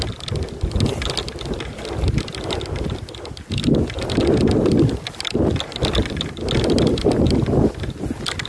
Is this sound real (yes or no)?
yes